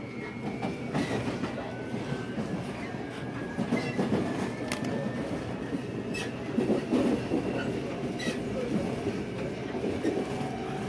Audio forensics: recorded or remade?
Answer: recorded